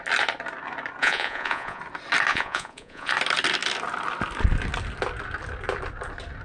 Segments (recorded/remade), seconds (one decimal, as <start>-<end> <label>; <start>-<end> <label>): 0.0-1.0 recorded; 1.0-1.8 remade; 1.8-2.3 recorded; 2.3-3.1 remade; 3.1-6.4 recorded